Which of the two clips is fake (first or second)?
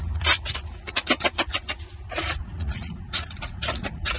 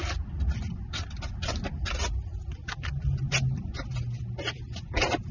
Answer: first